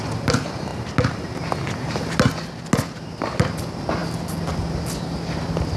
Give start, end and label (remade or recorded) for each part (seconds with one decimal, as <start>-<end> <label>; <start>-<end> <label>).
0.0-5.8 recorded